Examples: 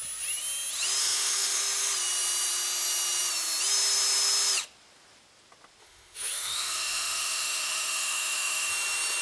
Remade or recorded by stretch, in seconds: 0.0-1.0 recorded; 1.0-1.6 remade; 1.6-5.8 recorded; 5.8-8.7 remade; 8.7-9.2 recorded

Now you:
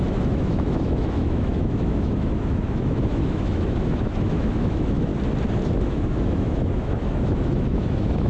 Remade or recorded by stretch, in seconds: 0.0-5.1 remade; 5.1-5.8 recorded; 5.8-8.3 remade

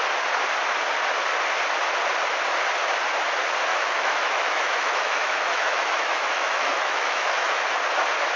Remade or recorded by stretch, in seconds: 0.0-3.7 recorded; 3.7-7.8 remade; 7.8-8.4 recorded

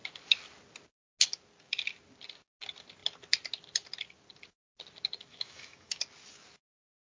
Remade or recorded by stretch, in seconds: 0.0-5.3 recorded; 5.3-6.0 remade; 6.0-7.2 recorded